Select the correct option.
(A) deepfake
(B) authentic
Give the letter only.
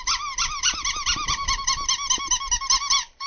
B